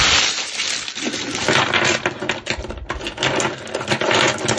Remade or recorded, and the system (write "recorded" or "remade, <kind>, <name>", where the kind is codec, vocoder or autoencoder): recorded